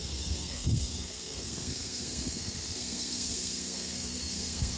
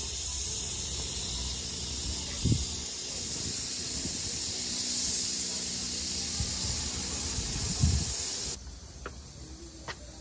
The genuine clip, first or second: second